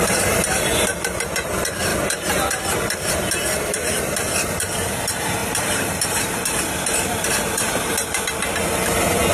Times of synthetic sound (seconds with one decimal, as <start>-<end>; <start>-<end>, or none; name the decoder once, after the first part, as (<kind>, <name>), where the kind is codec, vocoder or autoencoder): 1.9-4.9 (vocoder, BigVGAN v2); 5.4-8.2